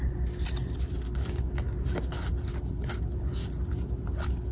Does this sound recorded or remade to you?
recorded